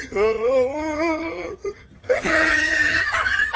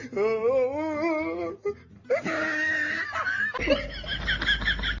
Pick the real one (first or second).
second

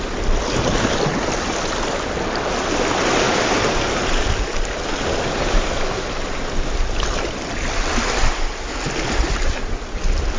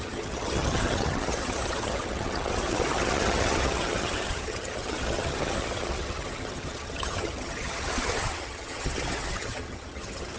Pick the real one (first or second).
first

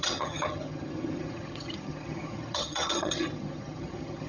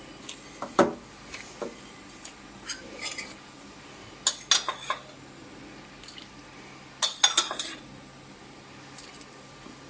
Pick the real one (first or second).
second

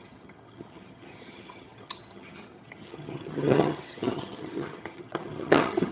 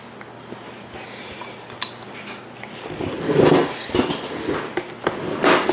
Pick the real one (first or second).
second